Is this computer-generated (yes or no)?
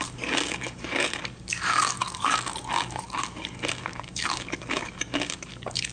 yes